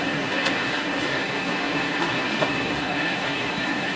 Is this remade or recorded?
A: remade